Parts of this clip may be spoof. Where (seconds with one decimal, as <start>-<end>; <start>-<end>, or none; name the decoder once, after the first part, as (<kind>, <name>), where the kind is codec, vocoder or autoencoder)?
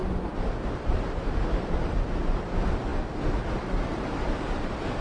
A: none